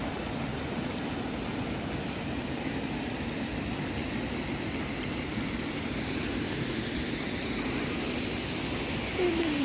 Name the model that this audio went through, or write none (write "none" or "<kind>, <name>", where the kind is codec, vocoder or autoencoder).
none